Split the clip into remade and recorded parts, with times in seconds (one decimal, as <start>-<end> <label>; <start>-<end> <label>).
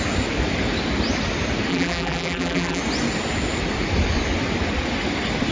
0.0-1.7 recorded; 1.7-2.8 remade; 2.8-5.5 recorded